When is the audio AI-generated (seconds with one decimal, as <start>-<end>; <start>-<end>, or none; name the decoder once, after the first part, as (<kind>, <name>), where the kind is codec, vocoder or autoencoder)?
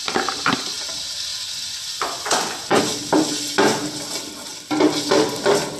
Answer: 1.3-2.8 (vocoder, Vocos)